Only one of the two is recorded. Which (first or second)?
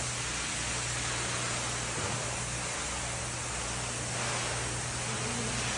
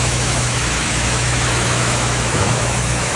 first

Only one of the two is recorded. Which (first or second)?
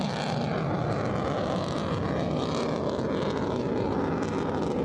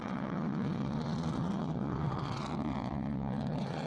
first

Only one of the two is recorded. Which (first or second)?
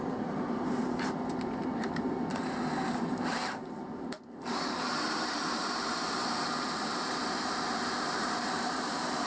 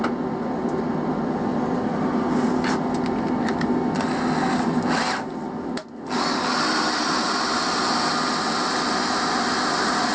second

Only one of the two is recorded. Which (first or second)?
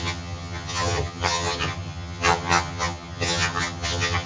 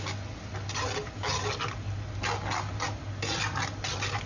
second